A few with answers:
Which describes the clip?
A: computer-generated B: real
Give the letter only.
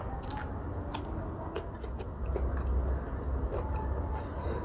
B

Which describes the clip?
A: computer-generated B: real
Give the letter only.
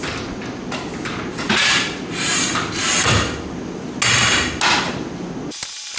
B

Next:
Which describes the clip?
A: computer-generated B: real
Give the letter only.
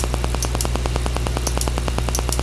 B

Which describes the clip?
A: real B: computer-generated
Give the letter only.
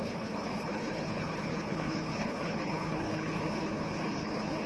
B